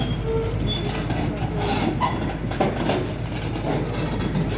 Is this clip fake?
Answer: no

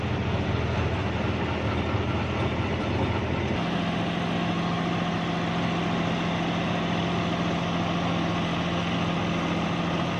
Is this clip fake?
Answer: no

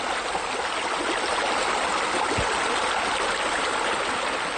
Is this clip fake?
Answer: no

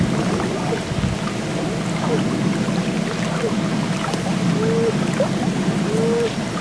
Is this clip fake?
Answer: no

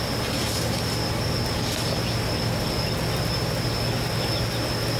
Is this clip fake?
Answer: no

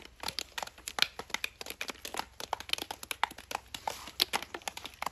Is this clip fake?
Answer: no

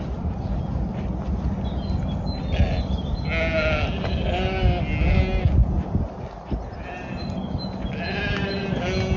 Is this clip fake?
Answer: no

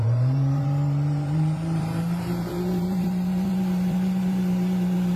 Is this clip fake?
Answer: yes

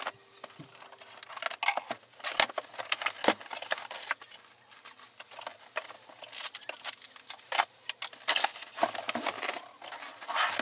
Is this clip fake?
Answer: no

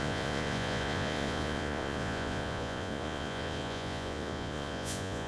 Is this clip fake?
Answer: yes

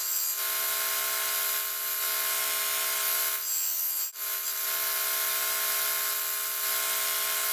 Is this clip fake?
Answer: no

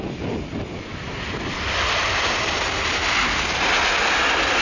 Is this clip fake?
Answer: no